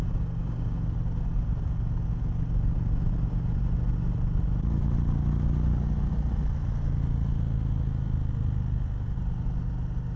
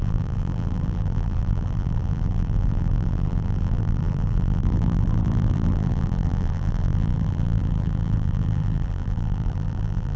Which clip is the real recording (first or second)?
first